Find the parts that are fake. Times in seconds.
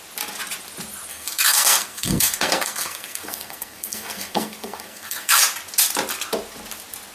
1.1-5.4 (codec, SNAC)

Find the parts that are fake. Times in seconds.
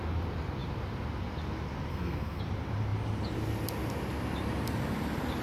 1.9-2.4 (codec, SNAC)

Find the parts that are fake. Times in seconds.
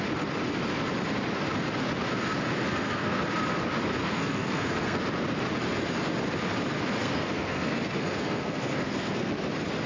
2.6-3.2 (codec, SNAC); 4.0-5.0; 7.0-9.3